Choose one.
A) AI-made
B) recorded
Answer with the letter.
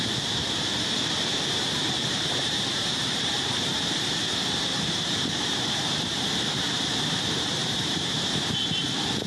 A